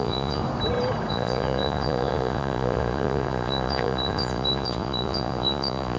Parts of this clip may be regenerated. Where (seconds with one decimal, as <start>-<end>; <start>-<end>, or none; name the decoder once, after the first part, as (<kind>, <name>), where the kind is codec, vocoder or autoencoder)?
0.0-0.4 (vocoder, Vocos); 1.1-6.0

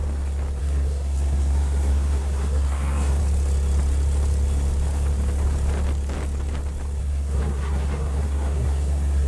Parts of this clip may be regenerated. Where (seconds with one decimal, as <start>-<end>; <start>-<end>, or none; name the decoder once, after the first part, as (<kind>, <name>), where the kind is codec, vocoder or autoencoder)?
0.6-3.2 (codec, SNAC); 7.0-9.3

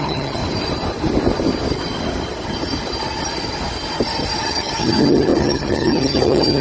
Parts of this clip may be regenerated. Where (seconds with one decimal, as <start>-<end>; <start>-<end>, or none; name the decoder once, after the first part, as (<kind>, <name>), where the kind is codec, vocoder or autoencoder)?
0.0-0.4 (vocoder, HiFi-GAN); 4.4-6.6

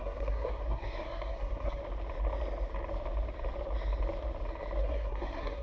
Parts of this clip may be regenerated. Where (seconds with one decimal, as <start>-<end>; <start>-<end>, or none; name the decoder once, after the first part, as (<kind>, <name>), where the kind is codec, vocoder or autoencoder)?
0.0-1.8 (codec, SNAC); 4.8-5.6

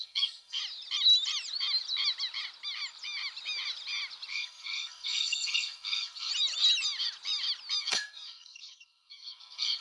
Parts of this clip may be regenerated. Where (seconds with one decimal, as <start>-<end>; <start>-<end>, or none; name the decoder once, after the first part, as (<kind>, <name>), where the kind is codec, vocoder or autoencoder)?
0.0-0.6 (codec, SNAC); 4.3-6.3; 7.8-9.8

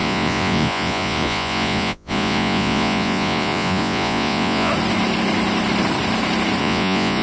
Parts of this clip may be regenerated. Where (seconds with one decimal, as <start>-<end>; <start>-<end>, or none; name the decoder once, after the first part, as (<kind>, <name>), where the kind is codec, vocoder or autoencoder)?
0.0-4.7 (vocoder, Vocos); 6.6-7.2